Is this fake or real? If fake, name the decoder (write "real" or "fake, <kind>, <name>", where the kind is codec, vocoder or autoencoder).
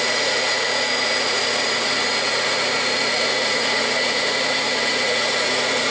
fake, vocoder, Vocos